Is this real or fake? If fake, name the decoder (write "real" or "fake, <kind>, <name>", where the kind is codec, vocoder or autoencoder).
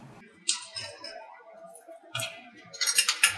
real